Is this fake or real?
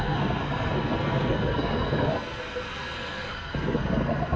fake